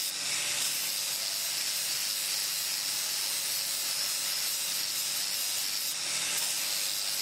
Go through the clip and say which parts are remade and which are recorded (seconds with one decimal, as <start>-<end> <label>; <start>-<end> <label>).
0.0-7.2 recorded